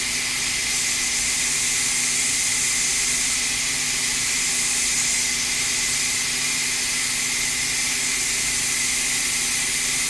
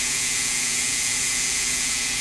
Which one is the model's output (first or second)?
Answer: second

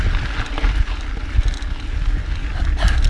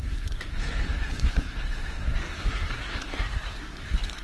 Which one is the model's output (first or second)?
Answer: second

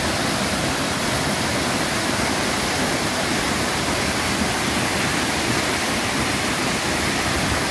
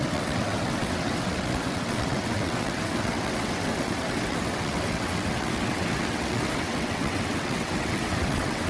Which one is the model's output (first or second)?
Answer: second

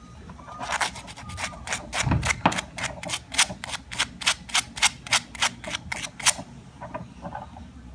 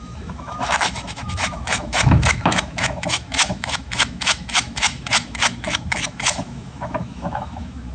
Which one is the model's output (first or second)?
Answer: second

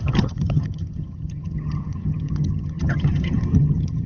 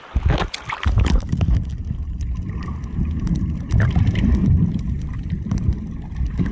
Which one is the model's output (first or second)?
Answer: first